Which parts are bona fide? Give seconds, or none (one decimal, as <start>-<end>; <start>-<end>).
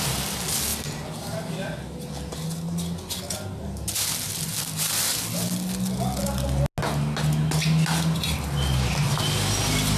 0.0-10.0